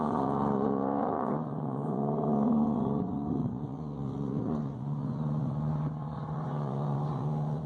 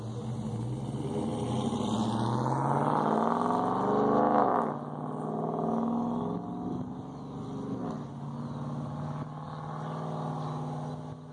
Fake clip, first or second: first